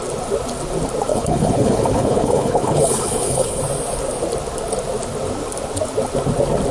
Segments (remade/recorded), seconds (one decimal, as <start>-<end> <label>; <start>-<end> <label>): 0.0-1.1 recorded; 1.1-3.6 remade; 3.6-6.7 recorded